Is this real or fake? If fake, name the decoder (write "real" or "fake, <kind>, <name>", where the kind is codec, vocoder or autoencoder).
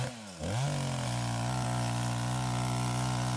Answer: real